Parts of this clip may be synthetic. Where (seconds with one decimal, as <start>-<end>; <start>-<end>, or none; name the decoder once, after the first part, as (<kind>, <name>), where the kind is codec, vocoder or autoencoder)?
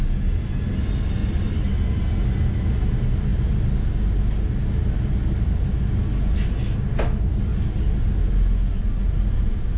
none